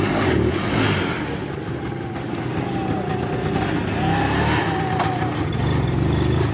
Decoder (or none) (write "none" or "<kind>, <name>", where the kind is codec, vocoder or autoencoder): none